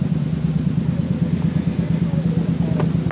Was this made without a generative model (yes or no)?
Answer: yes